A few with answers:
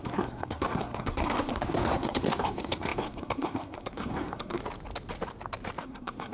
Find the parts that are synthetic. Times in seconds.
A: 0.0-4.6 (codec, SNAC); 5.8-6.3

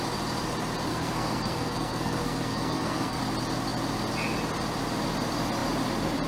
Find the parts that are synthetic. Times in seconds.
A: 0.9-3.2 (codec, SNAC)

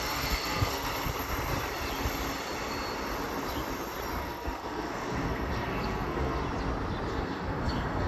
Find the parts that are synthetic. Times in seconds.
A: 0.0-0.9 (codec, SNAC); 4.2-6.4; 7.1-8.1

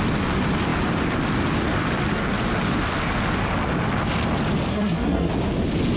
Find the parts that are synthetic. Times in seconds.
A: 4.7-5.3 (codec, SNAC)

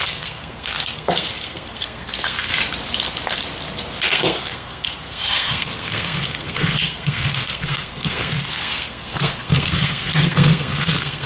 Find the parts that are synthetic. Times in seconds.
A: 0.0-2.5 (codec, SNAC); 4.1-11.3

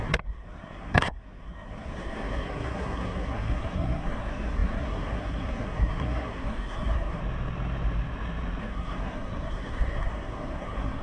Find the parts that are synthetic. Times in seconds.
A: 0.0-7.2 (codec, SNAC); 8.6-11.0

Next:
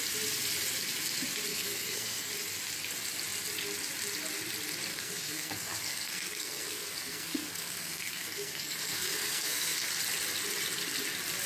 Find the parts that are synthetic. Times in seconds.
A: 1.5-2.3 (codec, SNAC); 4.9-9.9

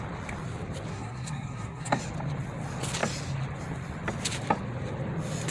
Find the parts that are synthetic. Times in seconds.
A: 0.9-2.0 (codec, SNAC)